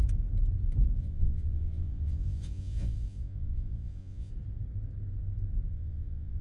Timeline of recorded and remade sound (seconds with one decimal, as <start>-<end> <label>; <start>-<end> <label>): 0.0-1.0 recorded; 1.0-4.3 remade; 4.3-5.7 recorded; 5.7-6.4 remade